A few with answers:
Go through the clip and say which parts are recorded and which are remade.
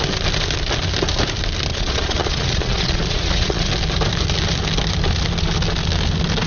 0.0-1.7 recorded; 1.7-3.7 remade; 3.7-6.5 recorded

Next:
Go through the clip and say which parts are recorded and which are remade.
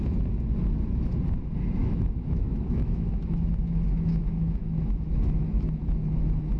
0.0-1.8 recorded; 1.8-5.8 remade; 5.8-6.6 recorded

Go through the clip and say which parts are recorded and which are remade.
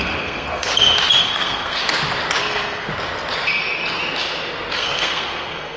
0.0-0.7 remade; 0.7-1.2 recorded; 1.2-1.8 remade; 1.8-2.4 recorded; 2.4-2.9 remade; 2.9-4.7 recorded; 4.7-5.8 remade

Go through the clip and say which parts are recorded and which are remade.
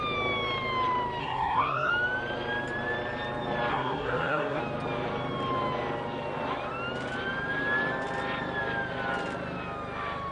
0.0-1.2 recorded; 1.2-1.9 remade; 1.9-3.7 recorded; 3.7-4.6 remade; 4.6-10.3 recorded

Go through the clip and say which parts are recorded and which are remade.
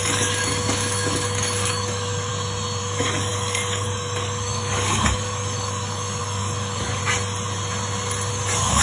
0.0-2.3 remade; 2.3-2.8 recorded; 2.8-7.0 remade; 7.0-8.3 recorded; 8.3-8.8 remade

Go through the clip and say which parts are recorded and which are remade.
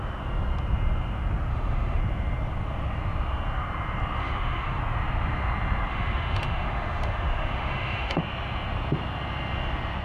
0.0-1.5 recorded; 1.5-2.0 remade; 2.0-4.2 recorded; 4.2-4.8 remade; 4.8-5.9 recorded; 5.9-8.2 remade; 8.2-10.0 recorded